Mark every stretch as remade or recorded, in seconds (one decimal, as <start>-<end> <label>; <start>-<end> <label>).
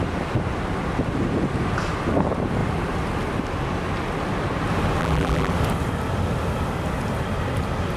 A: 0.0-5.0 recorded; 5.0-5.5 remade; 5.5-8.0 recorded